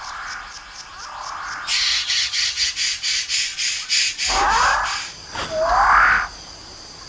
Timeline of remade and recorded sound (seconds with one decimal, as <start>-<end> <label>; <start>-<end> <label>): 0.0-1.9 recorded; 1.9-2.7 remade; 2.7-7.1 recorded